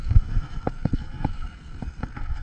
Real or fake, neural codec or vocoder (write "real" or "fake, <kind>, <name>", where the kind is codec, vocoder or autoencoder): fake, codec, SNAC